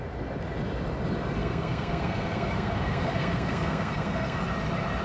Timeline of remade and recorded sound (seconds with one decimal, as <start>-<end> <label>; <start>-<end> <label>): 0.0-1.4 recorded; 1.4-4.4 remade; 4.4-5.0 recorded